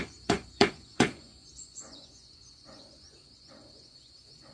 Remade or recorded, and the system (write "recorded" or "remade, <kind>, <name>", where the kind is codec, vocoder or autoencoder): remade, vocoder, Vocos